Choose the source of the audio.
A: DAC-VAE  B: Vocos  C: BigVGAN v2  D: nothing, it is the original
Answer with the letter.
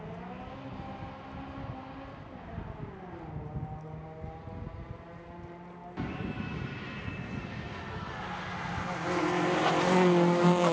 D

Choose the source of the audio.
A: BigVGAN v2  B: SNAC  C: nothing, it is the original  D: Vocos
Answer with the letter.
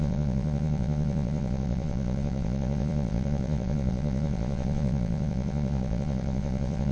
D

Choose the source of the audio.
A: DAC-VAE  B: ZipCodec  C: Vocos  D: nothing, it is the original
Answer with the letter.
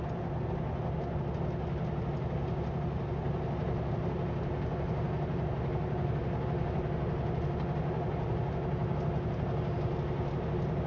D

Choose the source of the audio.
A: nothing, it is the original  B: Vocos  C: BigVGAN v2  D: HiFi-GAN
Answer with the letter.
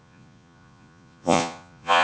B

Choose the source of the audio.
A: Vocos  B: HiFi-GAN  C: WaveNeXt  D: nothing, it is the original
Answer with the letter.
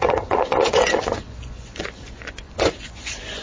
A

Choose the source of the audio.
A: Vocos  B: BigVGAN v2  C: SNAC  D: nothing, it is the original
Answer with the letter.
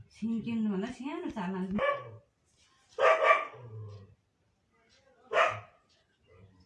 D